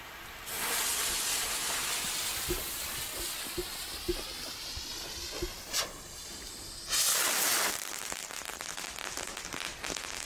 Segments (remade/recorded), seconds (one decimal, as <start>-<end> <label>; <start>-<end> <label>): 0.0-10.3 recorded